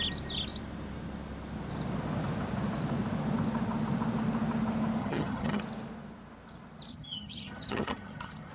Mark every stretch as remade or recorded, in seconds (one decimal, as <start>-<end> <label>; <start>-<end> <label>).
0.0-5.0 recorded; 5.0-5.6 remade; 5.6-6.9 recorded; 6.9-8.5 remade